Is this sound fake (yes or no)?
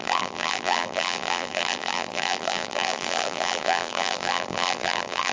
yes